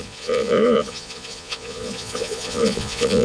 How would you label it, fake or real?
fake